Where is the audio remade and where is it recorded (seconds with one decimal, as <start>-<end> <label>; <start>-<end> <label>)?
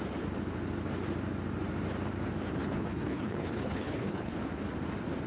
0.0-2.6 recorded; 2.6-4.4 remade; 4.4-5.3 recorded